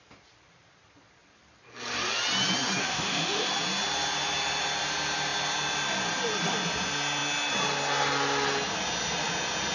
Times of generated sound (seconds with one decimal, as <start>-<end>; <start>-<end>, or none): 2.8-3.5